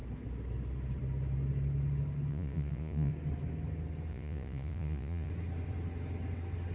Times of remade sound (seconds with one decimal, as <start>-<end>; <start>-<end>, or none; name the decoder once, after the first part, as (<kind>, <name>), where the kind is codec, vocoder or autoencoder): 2.3-3.1 (vocoder, Vocos); 4.1-5.3